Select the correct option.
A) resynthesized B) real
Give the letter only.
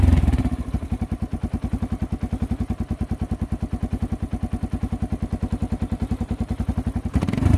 B